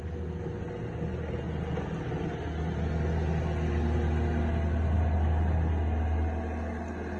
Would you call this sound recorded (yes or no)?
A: yes